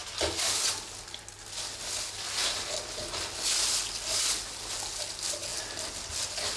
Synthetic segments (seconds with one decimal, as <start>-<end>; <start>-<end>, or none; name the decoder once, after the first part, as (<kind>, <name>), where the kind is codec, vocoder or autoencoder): none